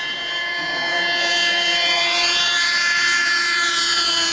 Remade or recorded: remade